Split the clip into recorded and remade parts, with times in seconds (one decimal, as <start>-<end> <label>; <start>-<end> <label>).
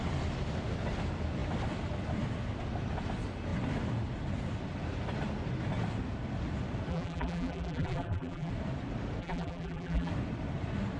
0.0-6.9 recorded; 6.9-8.5 remade; 8.5-9.2 recorded; 9.2-10.1 remade; 10.1-11.0 recorded